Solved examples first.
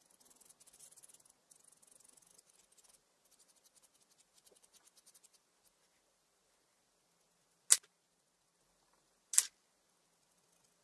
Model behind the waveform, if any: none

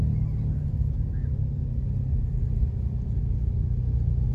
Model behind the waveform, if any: none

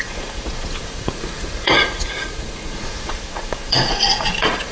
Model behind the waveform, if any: vocoder, Vocos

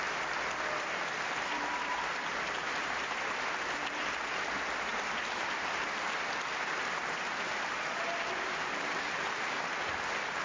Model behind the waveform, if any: vocoder, BigVGAN v2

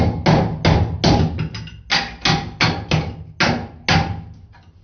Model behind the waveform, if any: none